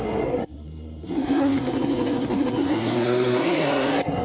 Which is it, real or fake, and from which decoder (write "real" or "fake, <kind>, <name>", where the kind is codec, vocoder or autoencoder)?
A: fake, codec, SNAC